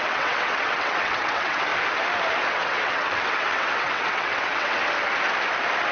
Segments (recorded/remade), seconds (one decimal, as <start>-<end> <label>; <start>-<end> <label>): 0.0-1.7 remade; 1.7-2.5 recorded; 2.5-4.8 remade; 4.8-5.9 recorded